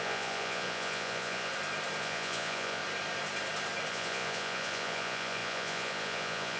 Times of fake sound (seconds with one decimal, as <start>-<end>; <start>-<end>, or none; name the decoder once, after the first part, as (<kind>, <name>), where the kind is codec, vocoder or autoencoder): 0.0-1.5 (vocoder, Vocos); 2.0-2.8; 3.9-6.6